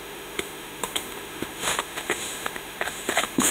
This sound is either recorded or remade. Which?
remade